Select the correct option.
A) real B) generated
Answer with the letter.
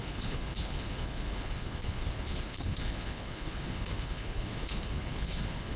B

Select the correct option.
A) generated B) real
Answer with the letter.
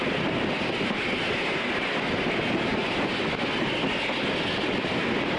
B